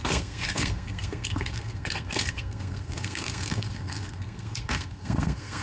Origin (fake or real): fake